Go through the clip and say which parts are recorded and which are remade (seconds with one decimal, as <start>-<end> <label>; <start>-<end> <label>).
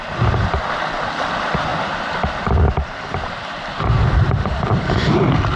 0.0-5.6 remade